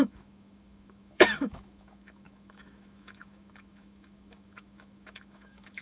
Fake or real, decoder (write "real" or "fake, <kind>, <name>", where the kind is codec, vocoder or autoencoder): fake, autoencoder, DAC-VAE